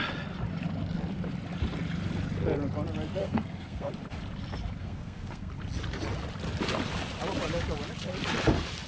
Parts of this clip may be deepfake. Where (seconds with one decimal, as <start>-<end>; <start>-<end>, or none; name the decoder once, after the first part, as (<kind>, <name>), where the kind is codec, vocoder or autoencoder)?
3.2-3.9 (codec, SNAC); 4.8-5.5